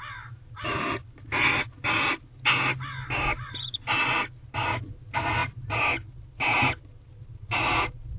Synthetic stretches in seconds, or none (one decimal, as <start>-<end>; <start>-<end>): none